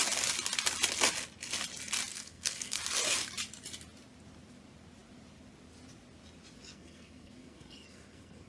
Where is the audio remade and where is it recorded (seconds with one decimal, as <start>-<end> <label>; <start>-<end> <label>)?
0.0-2.1 recorded; 2.1-2.8 remade; 2.8-6.7 recorded; 6.7-8.5 remade

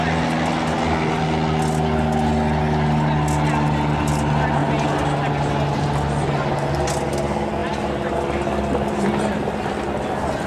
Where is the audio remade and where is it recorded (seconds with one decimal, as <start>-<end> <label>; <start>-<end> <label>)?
0.0-10.5 recorded

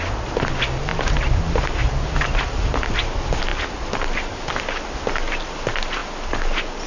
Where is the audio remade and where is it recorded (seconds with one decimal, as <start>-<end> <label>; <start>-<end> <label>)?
0.0-6.9 recorded

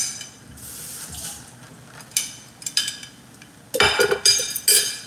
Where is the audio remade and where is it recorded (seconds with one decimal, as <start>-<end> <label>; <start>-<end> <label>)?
0.0-5.1 recorded